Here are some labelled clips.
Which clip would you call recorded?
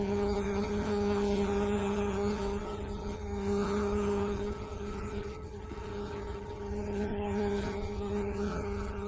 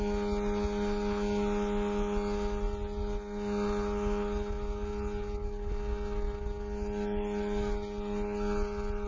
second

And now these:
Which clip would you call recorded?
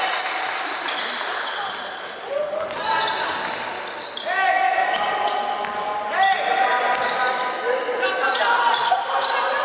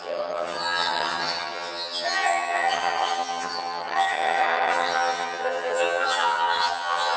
first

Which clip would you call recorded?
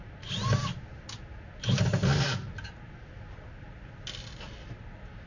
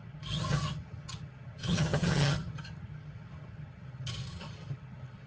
first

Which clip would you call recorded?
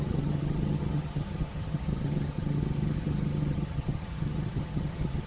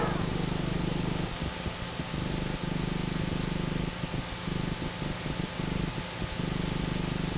second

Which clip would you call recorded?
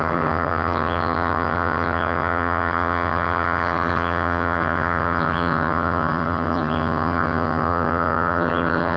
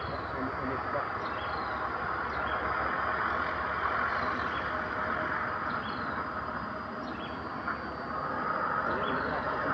second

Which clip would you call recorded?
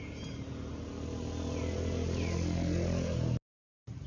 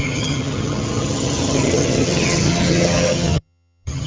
first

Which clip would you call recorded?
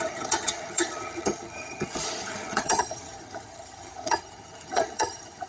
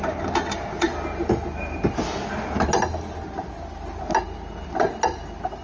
second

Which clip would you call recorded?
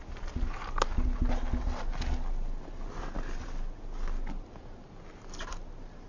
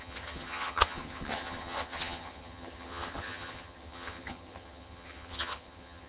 first